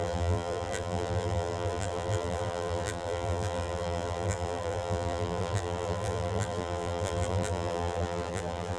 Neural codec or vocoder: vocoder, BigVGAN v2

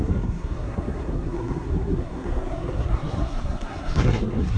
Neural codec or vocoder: codec, SNAC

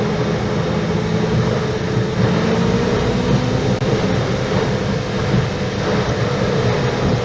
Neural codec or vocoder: none